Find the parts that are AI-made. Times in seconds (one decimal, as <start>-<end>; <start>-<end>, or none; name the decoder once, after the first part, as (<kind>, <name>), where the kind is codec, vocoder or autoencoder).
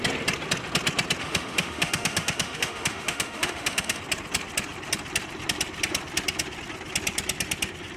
1.2-4.0 (autoencoder, DAC-VAE)